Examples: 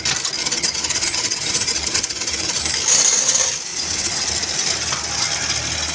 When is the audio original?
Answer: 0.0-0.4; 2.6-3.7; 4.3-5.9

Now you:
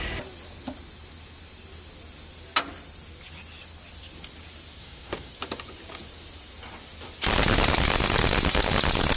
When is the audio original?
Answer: 0.0-4.8; 5.3-9.2